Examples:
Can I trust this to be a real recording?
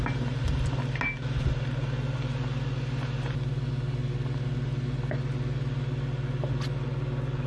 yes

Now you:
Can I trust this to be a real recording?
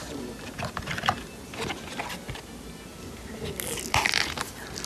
yes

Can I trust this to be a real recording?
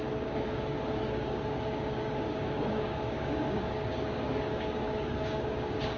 no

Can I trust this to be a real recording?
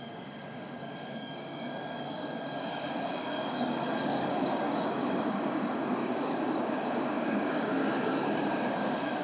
no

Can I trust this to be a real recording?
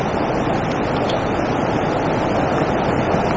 yes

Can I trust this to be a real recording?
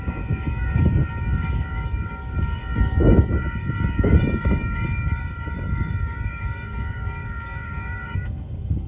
no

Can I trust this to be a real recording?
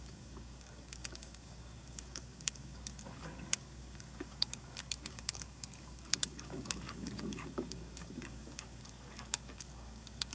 no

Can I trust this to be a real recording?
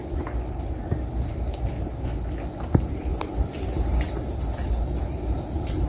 yes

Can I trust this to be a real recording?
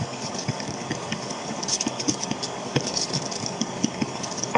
no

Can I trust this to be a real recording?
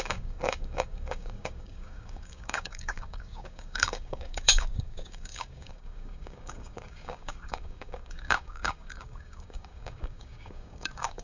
no